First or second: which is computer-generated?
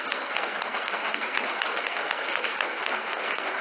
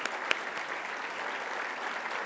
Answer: first